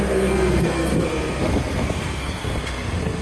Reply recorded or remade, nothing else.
remade